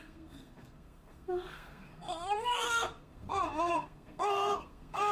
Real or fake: fake